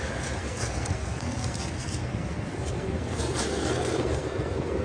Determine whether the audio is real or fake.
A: fake